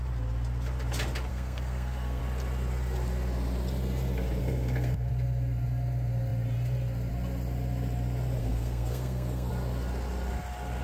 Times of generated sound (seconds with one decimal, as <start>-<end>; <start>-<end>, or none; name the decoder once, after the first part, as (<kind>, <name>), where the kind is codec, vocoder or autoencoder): 1.3-2.2 (codec, SNAC); 4.4-5.1; 8.4-9.5

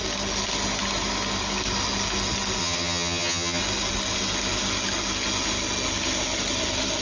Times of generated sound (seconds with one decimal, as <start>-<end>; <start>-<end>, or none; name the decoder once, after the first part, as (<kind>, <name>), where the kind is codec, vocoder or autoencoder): 2.6-3.6 (vocoder, HiFi-GAN)

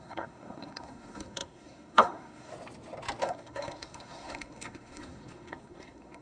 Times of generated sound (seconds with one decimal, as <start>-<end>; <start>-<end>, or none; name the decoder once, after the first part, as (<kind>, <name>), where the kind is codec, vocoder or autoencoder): 0.0-2.5 (codec, SNAC); 3.2-6.2

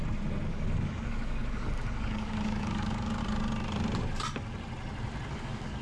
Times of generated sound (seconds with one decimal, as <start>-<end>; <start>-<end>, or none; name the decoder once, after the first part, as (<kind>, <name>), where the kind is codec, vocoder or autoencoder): 0.5-3.2 (codec, DAC); 5.3-5.8

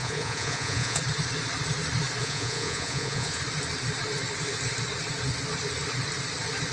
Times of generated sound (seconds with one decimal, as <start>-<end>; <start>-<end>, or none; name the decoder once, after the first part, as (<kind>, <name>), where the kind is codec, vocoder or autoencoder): 0.0-1.0 (vocoder, Vocos); 2.2-3.4

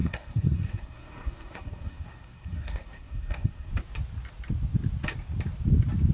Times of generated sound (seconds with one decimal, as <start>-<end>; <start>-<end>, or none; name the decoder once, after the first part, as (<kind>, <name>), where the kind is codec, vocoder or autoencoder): 0.0-3.7 (codec, SNAC)

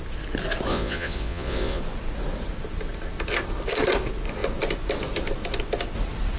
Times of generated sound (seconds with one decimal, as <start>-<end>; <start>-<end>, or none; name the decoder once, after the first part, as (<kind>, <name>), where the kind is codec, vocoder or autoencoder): 0.7-1.8 (vocoder, Vocos)

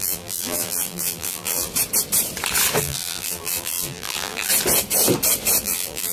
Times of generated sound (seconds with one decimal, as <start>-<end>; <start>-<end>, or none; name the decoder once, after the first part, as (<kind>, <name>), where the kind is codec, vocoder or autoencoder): 0.0-1.7 (vocoder, BigVGAN v2); 2.8-4.5; 5.6-6.1